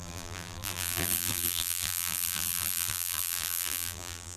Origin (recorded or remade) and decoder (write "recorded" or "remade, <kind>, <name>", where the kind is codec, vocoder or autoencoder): remade, vocoder, BigVGAN v2